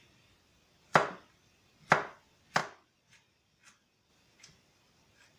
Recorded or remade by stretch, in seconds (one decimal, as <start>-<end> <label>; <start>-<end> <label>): 0.0-5.4 recorded